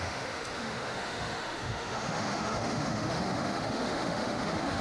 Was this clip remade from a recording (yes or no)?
yes